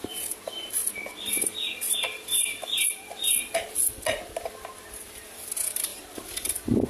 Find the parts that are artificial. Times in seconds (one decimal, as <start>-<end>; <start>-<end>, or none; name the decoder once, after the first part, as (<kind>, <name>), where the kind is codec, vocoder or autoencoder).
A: 0.0-0.8 (vocoder, BigVGAN v2); 4.9-5.9